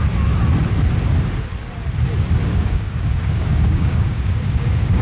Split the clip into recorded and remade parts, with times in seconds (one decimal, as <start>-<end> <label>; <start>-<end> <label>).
0.0-2.4 recorded; 2.4-5.0 remade